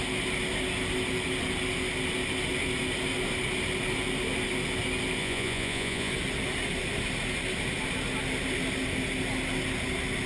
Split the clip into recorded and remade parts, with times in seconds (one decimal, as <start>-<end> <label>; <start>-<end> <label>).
0.0-5.2 recorded; 5.2-6.1 remade; 6.1-10.3 recorded